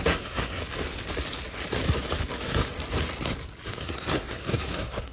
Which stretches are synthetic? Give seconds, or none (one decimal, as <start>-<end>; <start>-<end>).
0.0-0.6; 3.7-5.1